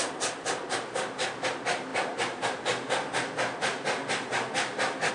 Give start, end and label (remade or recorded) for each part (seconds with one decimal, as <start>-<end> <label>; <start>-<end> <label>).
0.0-5.1 recorded

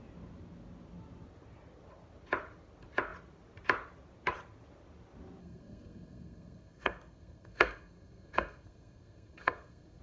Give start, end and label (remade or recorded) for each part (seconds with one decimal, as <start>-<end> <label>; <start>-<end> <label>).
0.0-5.4 recorded; 5.4-10.0 remade

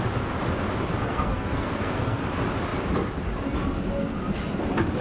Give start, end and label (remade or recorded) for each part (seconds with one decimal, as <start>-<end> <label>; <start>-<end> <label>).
0.0-1.0 recorded; 1.0-2.2 remade; 2.2-5.0 recorded

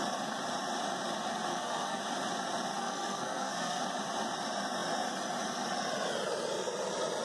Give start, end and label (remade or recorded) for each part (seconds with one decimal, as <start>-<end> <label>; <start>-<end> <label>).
0.0-1.5 recorded; 1.5-2.0 remade; 2.0-2.8 recorded; 2.8-3.8 remade; 3.8-7.2 recorded